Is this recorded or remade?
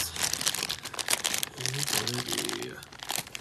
recorded